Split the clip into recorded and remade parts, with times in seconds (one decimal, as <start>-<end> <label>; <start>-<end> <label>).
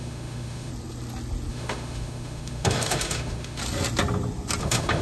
0.0-0.7 remade; 0.7-1.5 recorded; 1.5-3.6 remade; 3.6-4.6 recorded; 4.6-5.0 remade